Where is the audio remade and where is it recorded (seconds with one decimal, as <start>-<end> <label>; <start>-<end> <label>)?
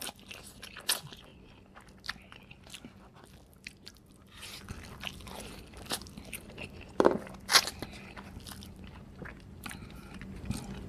0.0-10.9 recorded